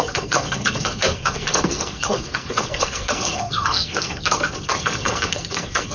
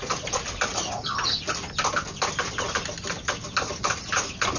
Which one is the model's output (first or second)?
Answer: first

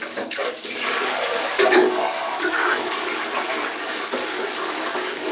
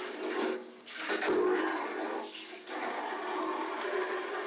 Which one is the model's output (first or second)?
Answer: first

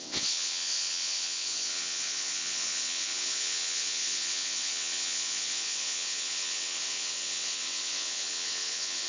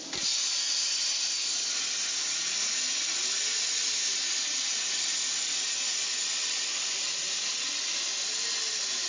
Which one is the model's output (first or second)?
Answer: first